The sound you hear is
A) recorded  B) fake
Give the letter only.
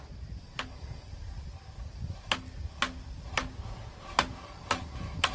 A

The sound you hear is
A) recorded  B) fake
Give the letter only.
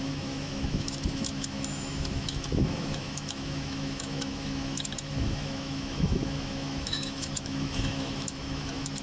B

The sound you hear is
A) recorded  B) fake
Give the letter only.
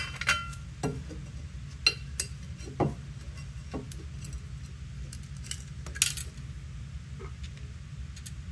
A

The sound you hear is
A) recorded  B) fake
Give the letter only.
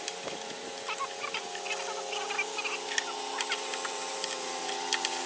A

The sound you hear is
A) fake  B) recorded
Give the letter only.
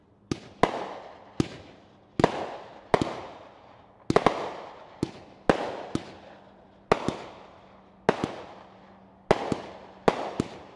B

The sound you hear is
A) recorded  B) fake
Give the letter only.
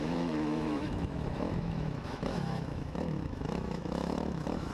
B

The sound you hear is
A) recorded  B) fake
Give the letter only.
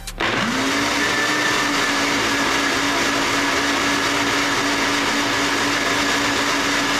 A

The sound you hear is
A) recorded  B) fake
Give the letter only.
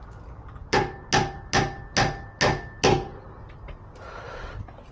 A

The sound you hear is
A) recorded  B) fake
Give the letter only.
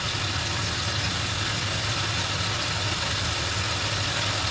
A